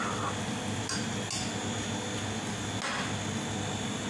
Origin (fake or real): real